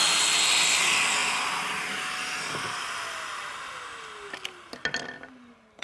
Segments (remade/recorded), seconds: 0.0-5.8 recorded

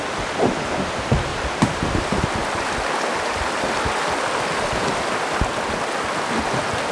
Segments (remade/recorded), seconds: 0.0-1.3 recorded; 1.3-1.9 remade; 1.9-6.9 recorded

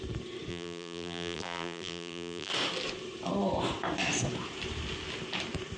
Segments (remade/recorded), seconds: 0.0-0.5 recorded; 0.5-2.5 remade; 2.5-5.8 recorded

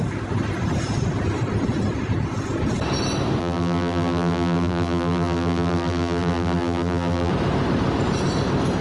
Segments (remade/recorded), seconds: 0.0-3.4 recorded; 3.4-7.3 remade; 7.3-8.8 recorded

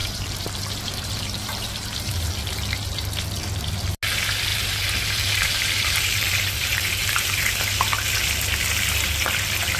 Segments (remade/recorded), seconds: 0.0-2.3 remade; 2.3-4.5 recorded; 4.5-7.8 remade; 7.8-9.8 recorded